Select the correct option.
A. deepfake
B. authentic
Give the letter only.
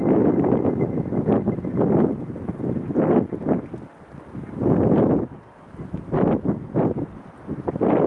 B